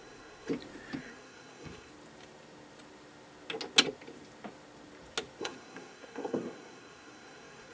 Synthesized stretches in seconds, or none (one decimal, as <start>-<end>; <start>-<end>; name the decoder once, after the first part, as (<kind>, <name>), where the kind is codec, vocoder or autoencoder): 0.0-0.5 (codec, SNAC); 1.0-1.9; 5.4-7.7